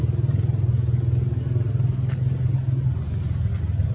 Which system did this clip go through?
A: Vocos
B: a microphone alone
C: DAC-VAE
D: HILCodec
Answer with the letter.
B